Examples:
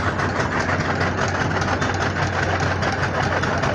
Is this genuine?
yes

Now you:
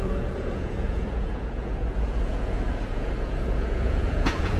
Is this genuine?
no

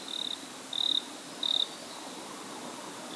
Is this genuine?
yes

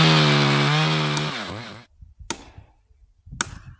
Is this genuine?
yes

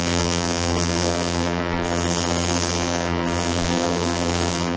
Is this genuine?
no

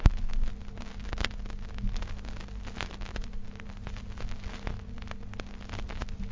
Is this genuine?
yes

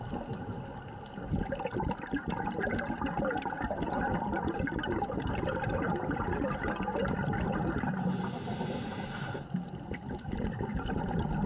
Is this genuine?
yes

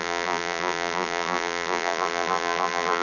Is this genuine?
no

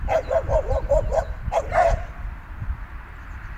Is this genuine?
no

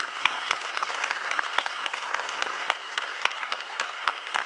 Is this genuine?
no